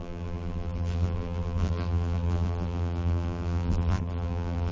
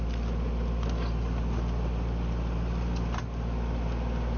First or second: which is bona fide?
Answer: second